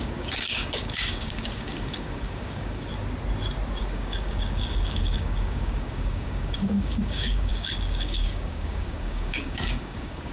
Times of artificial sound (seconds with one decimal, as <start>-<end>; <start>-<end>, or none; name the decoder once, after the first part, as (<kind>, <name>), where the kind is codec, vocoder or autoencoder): 0.0-2.9 (codec, DAC); 3.8-10.3